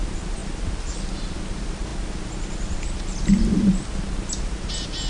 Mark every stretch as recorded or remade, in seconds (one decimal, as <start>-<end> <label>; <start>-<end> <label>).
0.0-5.1 recorded